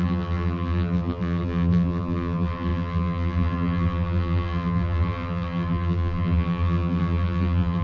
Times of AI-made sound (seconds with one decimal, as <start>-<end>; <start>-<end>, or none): 0.0-7.8